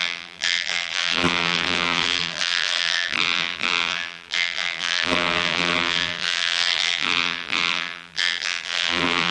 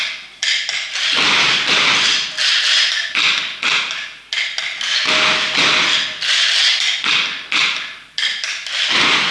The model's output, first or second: first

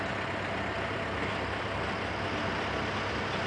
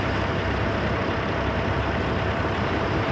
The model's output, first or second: second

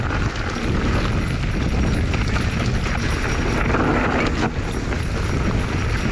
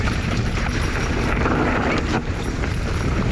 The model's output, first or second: second